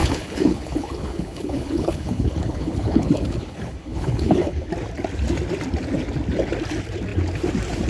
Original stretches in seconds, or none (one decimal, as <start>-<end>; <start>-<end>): 4.7-7.9